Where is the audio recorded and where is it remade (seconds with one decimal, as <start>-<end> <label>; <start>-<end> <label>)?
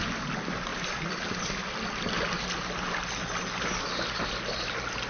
0.0-5.1 recorded